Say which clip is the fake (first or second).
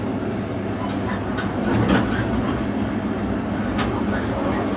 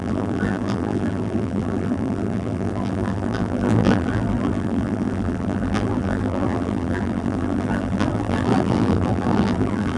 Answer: second